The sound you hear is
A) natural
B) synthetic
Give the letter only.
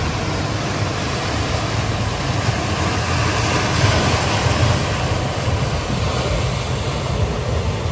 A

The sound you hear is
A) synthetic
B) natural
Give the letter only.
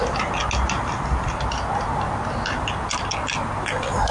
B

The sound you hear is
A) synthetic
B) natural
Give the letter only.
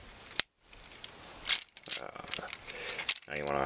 B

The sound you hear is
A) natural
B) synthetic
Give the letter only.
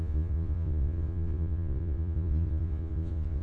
B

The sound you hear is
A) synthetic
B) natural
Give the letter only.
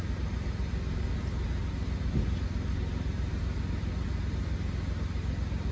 B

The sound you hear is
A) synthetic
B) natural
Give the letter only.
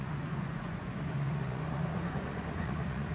A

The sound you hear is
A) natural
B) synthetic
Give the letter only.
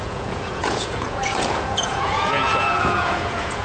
B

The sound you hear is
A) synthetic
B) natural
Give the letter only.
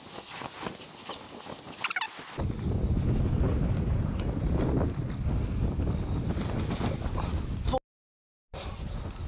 B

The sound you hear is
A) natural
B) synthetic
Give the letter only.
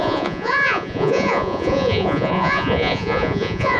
B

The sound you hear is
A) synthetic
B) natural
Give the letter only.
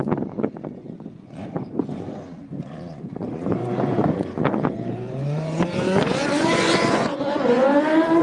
A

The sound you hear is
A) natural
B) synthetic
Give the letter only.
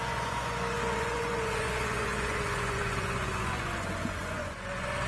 B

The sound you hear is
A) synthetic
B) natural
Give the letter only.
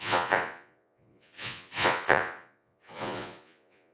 A